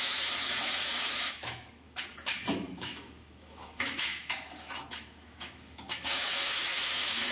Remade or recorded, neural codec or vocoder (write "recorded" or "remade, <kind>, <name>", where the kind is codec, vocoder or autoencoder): remade, autoencoder, DAC-VAE